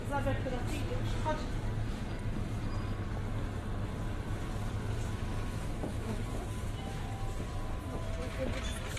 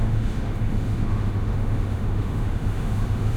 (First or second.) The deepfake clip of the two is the second